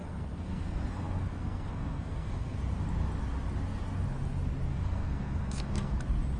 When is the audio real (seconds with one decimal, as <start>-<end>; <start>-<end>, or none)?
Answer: 2.6-4.7; 6.0-6.4